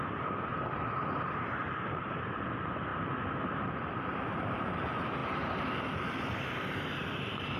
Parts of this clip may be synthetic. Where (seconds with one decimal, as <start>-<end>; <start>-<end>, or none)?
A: 0.0-0.5; 1.2-2.9; 4.4-7.6